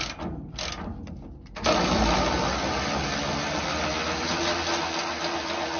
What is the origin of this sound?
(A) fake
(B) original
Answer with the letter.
B